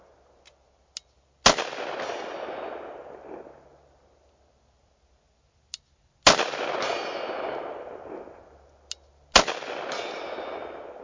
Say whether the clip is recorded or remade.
recorded